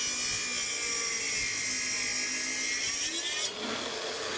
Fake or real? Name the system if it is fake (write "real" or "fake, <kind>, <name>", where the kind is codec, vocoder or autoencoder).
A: real